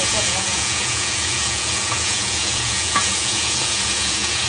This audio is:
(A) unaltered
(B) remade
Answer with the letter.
B